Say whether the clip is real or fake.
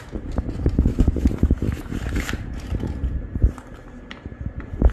fake